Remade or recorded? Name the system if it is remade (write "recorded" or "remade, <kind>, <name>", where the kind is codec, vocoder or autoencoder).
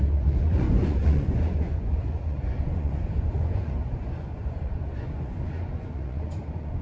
remade, vocoder, Vocos